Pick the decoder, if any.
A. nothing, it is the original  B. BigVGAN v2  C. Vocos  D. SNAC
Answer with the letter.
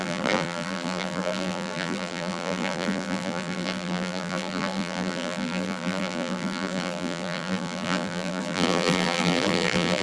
B